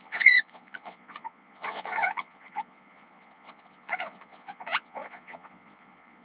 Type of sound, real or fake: fake